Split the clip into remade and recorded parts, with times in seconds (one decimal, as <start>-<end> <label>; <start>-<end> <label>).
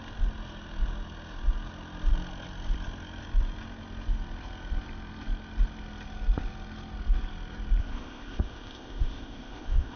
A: 0.0-7.8 recorded; 7.8-10.0 remade